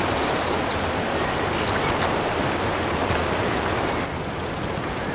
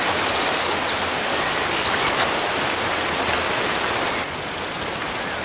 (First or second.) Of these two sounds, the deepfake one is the second